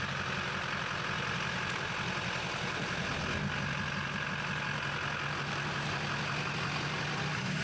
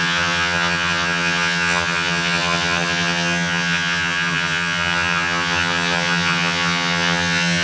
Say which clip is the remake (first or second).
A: second